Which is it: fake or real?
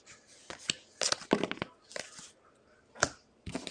real